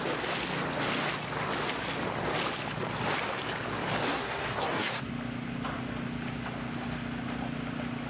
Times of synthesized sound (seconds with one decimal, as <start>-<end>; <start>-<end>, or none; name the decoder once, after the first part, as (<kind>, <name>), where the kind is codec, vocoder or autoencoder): 4.1-5.1 (codec, SNAC)